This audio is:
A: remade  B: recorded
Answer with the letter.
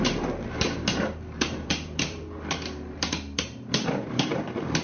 A